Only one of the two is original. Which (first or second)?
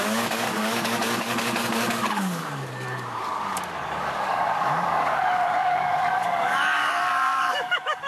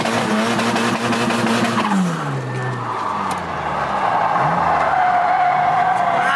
second